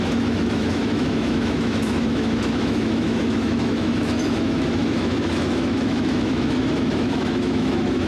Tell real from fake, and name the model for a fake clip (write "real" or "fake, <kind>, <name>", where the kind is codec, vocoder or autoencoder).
fake, autoencoder, DAC-VAE